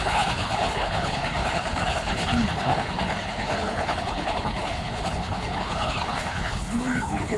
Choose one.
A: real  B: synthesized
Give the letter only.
B